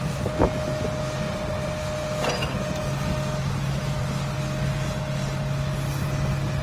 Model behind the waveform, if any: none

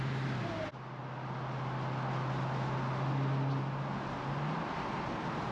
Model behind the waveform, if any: none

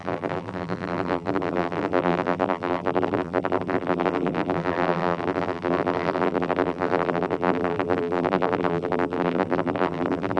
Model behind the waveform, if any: vocoder, BigVGAN v2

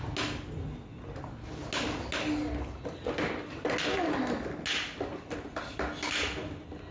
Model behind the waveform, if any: none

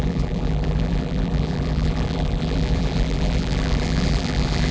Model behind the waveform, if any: vocoder, BigVGAN v2